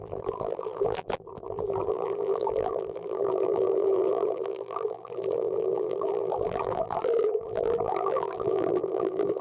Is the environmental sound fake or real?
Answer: fake